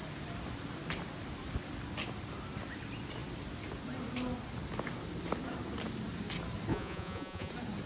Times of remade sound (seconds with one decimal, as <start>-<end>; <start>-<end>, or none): 6.7-7.5